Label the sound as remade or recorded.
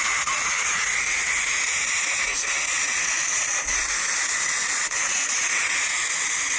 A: remade